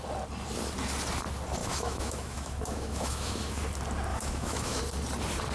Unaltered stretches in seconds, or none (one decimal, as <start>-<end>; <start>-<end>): 0.0-1.6; 3.6-4.1; 4.8-5.5